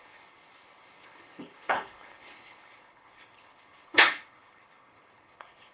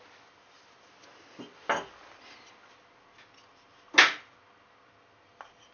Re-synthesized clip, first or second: first